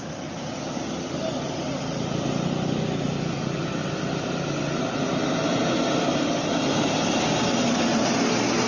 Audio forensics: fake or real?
real